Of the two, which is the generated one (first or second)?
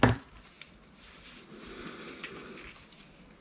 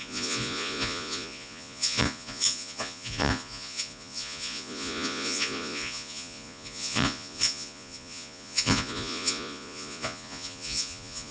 second